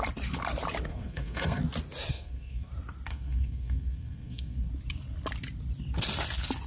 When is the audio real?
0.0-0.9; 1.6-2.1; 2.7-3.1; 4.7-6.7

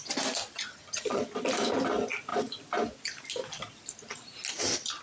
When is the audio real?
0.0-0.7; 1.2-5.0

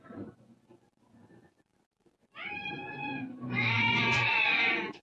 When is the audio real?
none

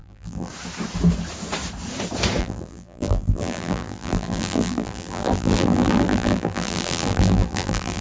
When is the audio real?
0.5-2.4

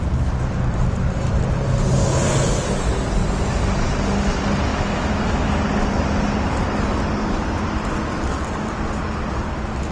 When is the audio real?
0.0-4.7; 5.5-9.9

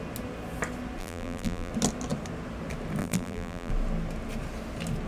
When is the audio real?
0.0-1.0; 1.7-3.0; 3.7-5.1

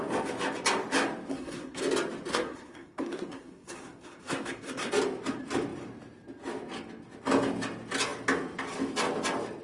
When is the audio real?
0.0-1.3; 1.8-2.3; 4.9-9.6